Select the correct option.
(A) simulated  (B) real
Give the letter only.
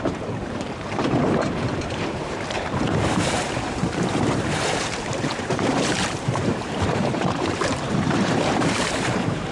A